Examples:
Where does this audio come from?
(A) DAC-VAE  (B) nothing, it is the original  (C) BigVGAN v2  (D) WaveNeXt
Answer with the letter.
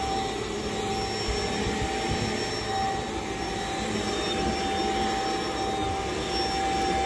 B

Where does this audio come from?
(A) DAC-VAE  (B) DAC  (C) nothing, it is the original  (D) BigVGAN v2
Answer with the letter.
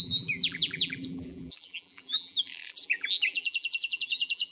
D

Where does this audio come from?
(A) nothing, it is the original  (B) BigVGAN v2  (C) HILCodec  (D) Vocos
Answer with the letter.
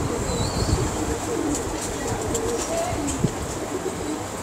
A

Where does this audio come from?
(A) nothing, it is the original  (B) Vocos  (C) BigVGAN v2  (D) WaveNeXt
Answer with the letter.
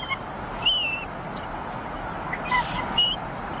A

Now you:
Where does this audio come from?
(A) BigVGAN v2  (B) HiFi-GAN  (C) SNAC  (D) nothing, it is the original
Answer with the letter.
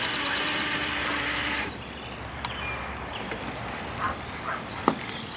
D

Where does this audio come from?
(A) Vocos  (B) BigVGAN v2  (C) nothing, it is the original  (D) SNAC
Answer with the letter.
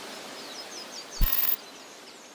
B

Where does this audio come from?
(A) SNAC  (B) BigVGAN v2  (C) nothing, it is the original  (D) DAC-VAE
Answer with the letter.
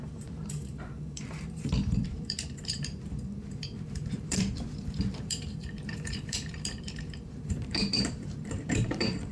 B